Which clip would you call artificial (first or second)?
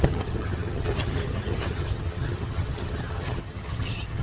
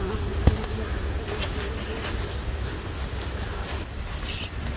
first